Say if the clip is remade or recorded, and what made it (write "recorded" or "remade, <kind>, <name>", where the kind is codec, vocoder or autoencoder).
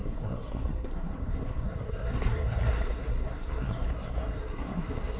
remade, codec, SNAC